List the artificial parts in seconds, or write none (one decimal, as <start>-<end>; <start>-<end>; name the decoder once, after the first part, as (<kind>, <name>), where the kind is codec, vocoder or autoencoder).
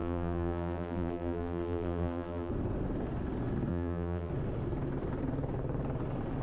0.0-2.5 (vocoder, BigVGAN v2); 3.7-4.3